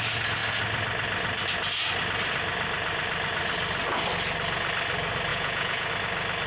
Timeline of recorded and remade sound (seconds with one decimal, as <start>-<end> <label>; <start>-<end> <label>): 0.0-5.3 recorded; 5.3-5.9 remade; 5.9-6.5 recorded